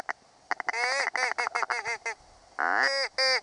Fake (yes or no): no